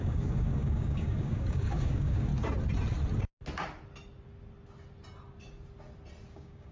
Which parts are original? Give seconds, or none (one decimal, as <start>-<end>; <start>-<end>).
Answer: 2.3-6.3